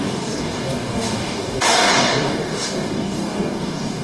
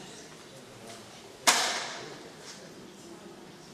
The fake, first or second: first